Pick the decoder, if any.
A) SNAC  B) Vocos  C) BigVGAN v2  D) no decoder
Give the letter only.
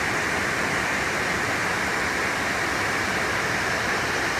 D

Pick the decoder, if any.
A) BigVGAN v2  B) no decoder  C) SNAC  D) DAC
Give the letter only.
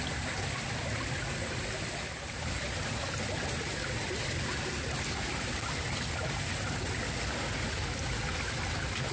B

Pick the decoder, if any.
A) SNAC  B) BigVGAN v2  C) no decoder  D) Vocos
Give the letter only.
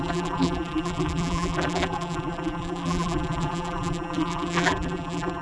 B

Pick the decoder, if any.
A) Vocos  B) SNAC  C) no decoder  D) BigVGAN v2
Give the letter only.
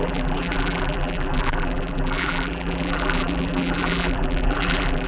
D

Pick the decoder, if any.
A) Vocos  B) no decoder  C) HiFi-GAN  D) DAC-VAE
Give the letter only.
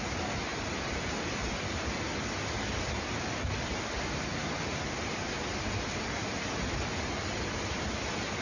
B